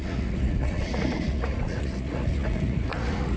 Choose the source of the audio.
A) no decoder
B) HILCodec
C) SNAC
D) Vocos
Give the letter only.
D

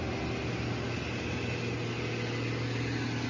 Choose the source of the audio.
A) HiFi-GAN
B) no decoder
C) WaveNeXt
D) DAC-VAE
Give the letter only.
B